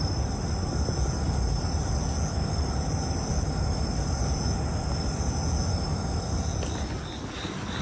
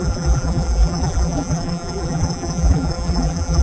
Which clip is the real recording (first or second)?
first